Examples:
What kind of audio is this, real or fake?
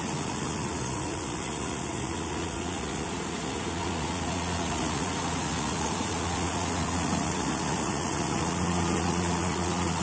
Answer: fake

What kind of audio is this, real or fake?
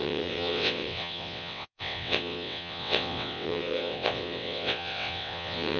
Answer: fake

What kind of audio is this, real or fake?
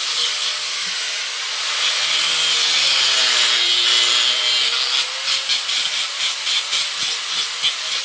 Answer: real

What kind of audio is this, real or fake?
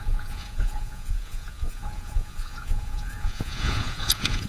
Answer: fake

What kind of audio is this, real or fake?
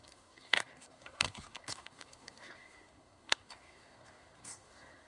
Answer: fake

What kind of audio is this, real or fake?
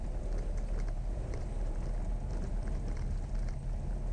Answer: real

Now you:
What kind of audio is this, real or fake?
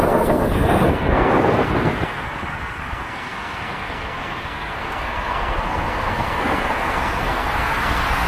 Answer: fake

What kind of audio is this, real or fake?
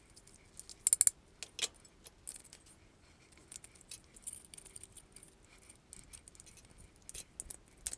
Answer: real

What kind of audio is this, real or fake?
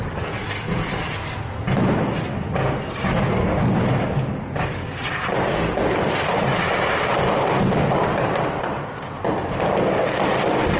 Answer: real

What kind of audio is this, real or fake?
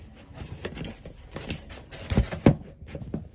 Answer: real